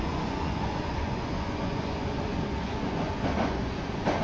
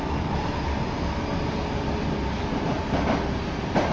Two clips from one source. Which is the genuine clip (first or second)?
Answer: second